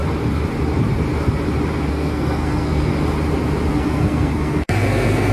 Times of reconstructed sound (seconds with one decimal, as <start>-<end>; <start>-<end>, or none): 1.9-2.9; 3.7-5.3

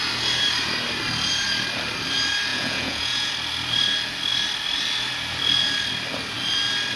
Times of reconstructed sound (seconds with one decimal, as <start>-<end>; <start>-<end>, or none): 2.5-3.3

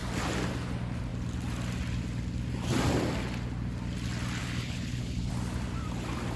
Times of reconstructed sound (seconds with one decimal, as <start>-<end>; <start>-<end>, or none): 4.4-5.3